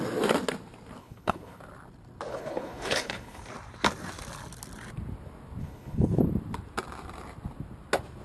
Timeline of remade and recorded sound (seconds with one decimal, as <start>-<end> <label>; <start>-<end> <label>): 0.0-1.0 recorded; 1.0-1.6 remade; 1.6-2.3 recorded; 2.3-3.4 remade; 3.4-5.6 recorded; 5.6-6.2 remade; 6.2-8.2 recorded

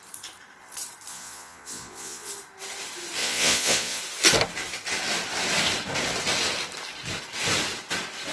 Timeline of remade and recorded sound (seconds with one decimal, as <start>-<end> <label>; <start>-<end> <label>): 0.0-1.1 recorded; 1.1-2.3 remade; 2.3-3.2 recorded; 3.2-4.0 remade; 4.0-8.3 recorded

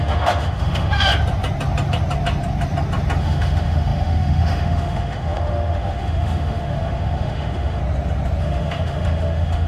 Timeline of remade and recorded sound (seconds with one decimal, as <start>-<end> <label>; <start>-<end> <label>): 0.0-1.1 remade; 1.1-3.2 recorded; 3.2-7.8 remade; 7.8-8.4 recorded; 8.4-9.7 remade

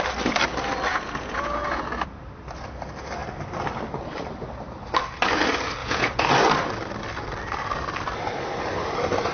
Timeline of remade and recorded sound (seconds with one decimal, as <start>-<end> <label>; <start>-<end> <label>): 0.0-0.9 recorded; 0.9-1.8 remade; 1.8-5.8 recorded; 5.8-6.3 remade; 6.3-9.3 recorded

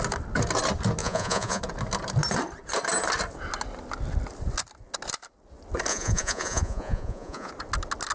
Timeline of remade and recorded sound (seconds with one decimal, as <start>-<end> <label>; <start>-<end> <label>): 0.0-1.0 recorded; 1.0-1.6 remade; 1.6-5.9 recorded; 5.9-7.5 remade; 7.5-8.1 recorded